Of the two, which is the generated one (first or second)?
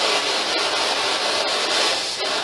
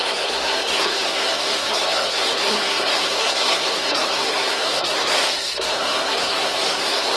second